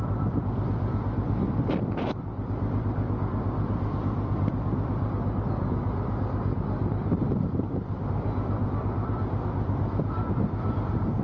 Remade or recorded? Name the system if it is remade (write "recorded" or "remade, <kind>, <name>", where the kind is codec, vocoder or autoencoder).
recorded